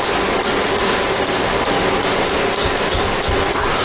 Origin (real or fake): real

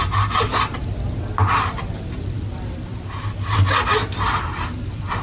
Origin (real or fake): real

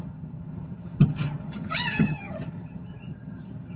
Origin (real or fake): fake